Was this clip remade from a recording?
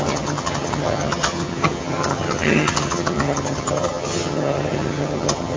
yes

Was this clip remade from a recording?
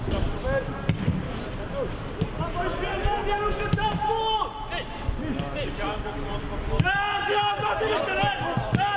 no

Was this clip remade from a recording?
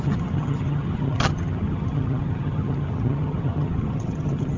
yes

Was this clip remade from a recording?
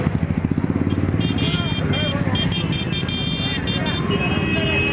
no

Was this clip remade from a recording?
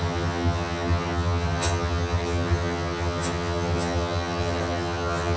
yes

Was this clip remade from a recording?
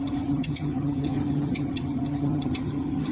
yes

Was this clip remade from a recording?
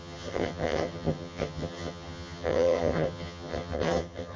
yes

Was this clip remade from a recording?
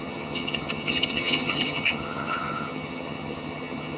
yes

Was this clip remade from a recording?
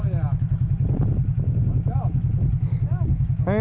no